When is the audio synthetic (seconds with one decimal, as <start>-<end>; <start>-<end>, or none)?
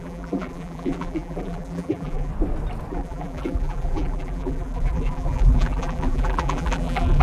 0.0-2.3; 2.9-7.2